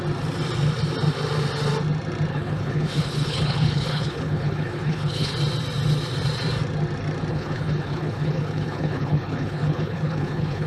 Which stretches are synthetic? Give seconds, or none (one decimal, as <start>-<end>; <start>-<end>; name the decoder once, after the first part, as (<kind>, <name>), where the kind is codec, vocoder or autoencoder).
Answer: 2.3-5.3 (codec, HILCodec); 7.3-10.7